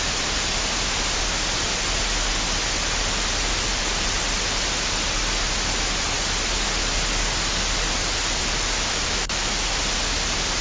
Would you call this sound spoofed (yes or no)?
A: no